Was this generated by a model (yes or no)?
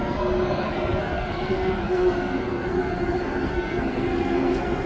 yes